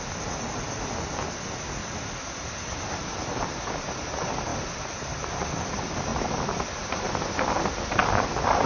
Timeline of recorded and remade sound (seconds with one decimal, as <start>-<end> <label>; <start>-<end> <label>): 0.0-1.8 recorded; 1.8-3.7 remade; 3.7-4.5 recorded; 4.5-5.4 remade; 5.4-6.1 recorded; 6.1-7.1 remade; 7.1-8.7 recorded